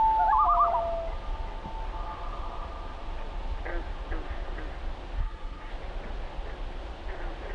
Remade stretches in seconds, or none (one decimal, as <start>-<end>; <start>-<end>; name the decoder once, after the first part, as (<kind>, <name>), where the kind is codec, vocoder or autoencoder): 5.2-5.7 (codec, SNAC)

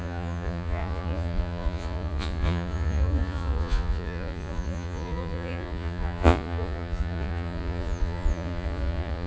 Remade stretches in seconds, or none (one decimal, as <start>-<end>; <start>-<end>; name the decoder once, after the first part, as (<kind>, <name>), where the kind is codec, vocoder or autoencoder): 0.0-9.3 (vocoder, Vocos)

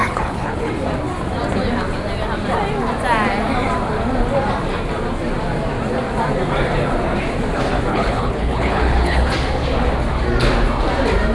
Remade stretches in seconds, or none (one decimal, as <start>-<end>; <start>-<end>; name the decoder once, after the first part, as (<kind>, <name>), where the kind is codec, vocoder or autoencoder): 0.0-0.7 (codec, HILCodec); 7.9-9.3